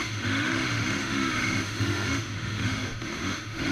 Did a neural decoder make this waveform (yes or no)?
yes